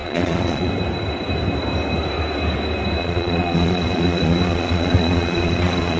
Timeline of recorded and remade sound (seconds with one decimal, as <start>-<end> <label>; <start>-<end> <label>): 0.0-0.7 remade; 0.7-3.0 recorded; 3.0-6.0 remade